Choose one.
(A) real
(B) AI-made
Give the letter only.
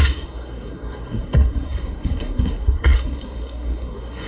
B